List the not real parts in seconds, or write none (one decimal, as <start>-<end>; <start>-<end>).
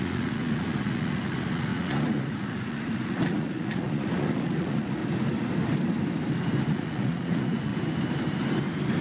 0.0-5.0; 6.7-7.7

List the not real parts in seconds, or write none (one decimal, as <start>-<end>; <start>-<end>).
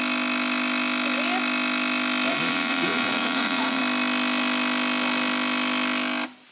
2.3-3.8